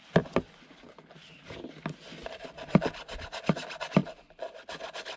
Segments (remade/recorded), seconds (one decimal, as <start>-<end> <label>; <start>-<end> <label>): 0.0-5.2 recorded